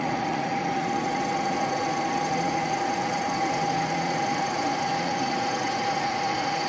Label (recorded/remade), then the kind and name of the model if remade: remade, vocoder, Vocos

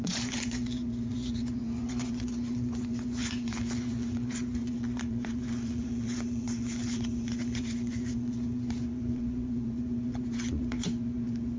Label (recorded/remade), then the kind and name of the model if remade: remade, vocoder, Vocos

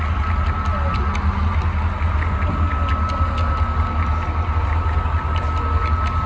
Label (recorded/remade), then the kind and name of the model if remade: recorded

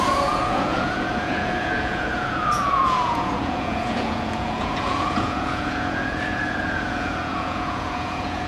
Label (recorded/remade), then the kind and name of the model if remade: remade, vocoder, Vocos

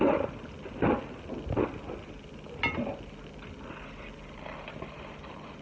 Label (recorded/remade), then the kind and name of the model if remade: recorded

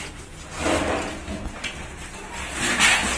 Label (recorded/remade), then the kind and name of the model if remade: recorded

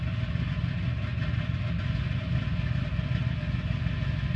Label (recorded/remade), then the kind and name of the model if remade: recorded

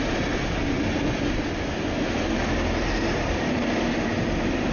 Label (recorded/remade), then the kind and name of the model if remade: recorded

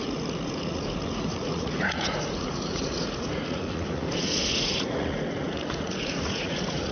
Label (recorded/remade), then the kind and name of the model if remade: remade, vocoder, Vocos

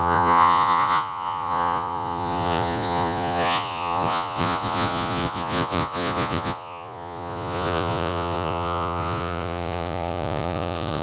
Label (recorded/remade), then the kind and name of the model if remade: remade, vocoder, Vocos